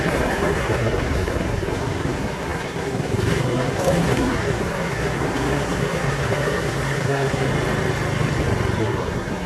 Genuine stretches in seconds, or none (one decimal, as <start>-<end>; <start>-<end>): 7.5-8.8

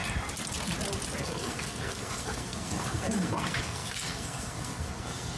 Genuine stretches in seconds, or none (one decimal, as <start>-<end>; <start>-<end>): 0.0-1.2

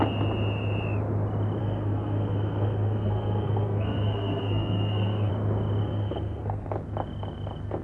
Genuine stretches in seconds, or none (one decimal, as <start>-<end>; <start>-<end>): 0.0-1.6; 5.3-5.8; 6.7-7.8

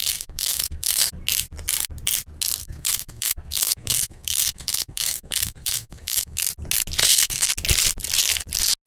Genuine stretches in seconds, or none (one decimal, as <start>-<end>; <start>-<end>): 1.1-2.6; 6.4-7.0; 7.5-8.9

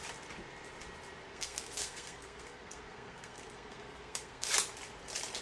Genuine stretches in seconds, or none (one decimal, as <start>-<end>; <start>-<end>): 0.0-1.3; 4.5-5.4

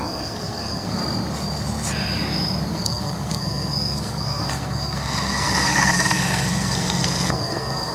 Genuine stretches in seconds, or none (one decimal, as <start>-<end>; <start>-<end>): 1.0-2.7